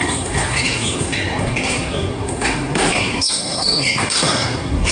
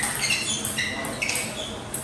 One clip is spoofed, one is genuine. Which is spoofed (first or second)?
first